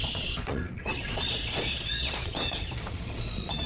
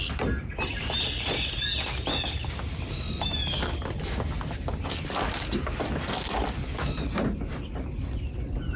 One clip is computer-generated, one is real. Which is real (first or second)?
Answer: second